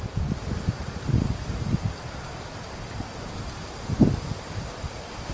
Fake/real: fake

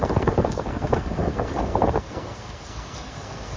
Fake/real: fake